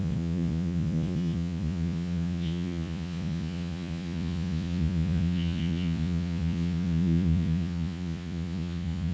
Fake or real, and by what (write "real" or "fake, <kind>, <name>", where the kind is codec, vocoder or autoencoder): fake, vocoder, Vocos